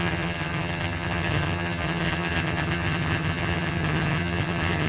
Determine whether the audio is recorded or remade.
remade